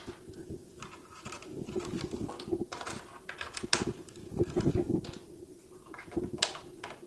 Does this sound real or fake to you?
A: real